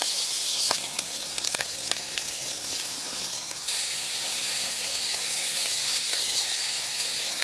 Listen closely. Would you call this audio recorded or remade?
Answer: remade